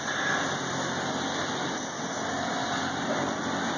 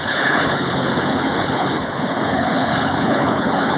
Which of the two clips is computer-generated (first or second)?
second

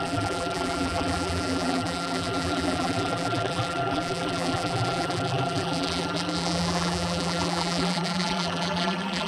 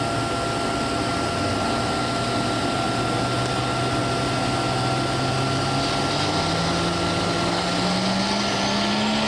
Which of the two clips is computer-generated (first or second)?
first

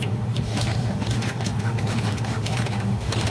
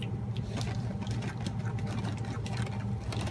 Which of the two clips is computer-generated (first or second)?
first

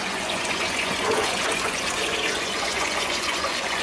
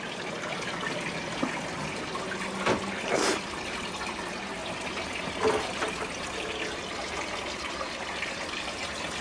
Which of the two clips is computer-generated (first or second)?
first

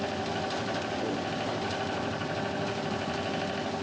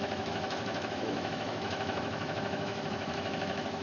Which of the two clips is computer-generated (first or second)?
second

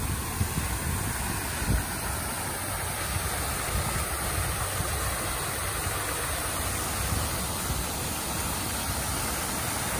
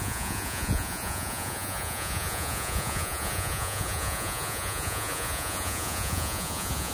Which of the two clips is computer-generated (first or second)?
second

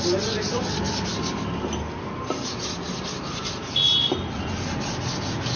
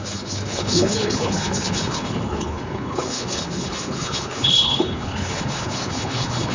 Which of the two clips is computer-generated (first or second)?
second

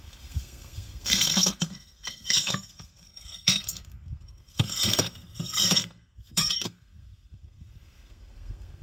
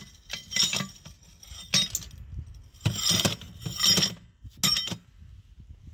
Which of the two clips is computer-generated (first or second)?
first